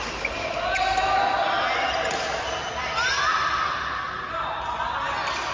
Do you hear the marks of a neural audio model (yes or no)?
no